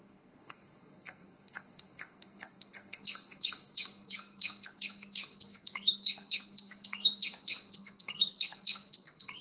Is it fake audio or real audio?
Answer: fake